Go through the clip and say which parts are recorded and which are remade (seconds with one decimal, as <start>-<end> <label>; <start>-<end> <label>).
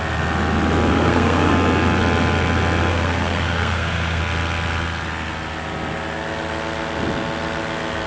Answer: 0.0-0.9 recorded; 0.9-1.5 remade; 1.5-2.9 recorded; 2.9-4.2 remade; 4.2-8.1 recorded